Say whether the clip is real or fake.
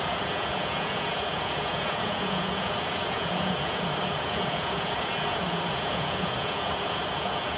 fake